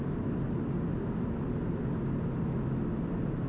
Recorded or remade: recorded